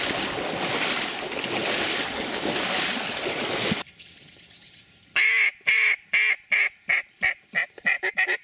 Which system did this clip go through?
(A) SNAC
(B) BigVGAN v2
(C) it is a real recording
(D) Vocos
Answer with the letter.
C